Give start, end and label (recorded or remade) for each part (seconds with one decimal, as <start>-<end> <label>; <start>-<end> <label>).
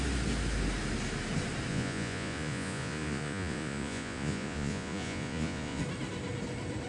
0.0-1.7 recorded; 1.7-5.8 remade; 5.8-6.9 recorded